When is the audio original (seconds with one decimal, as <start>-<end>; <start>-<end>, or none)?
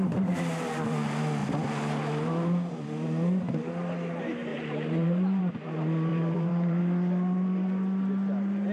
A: 0.0-4.5; 5.4-6.1; 6.8-8.7